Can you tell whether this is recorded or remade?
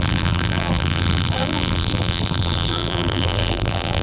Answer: remade